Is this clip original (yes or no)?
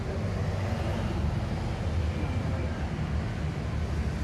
yes